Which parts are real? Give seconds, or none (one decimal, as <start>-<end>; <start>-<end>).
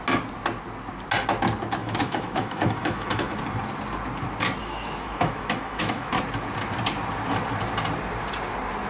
0.0-1.8; 3.4-4.6; 6.1-8.9